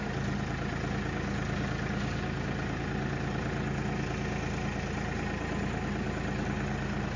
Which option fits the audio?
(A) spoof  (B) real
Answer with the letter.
B